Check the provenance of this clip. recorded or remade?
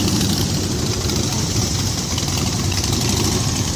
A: remade